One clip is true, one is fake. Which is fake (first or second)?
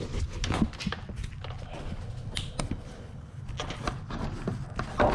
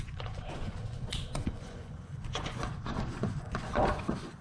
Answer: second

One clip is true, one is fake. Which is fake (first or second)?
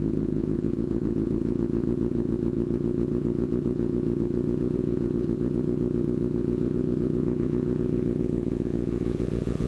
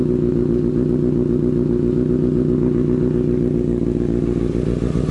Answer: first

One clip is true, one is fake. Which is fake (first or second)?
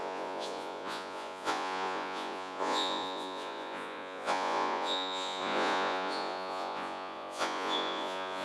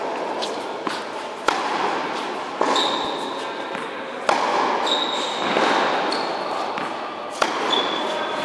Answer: first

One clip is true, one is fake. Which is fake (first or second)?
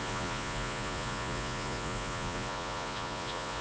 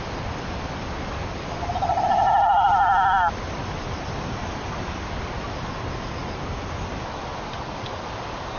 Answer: first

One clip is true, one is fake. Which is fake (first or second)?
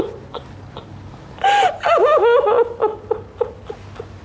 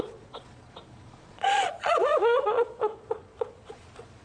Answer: second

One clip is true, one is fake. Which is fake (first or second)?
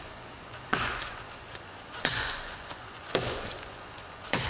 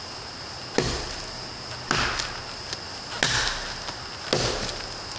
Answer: first